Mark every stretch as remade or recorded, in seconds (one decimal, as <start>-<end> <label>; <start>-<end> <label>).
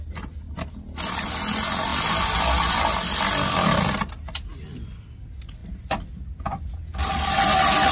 0.0-7.9 recorded